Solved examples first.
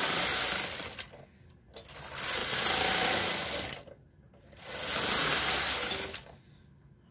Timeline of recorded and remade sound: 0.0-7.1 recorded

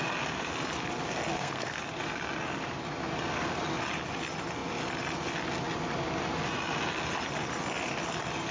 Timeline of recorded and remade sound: 0.0-1.3 recorded; 1.3-1.8 remade; 1.8-8.5 recorded